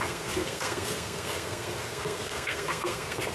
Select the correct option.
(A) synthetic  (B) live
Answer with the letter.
A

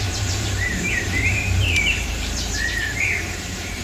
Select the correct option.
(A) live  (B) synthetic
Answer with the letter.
B